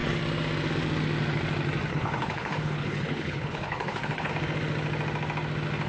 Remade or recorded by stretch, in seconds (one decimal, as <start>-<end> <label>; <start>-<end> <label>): 0.0-1.9 recorded; 1.9-4.3 remade; 4.3-5.9 recorded